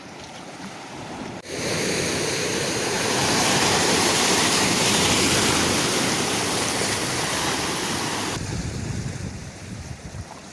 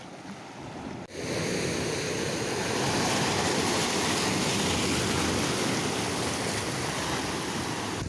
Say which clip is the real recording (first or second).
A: second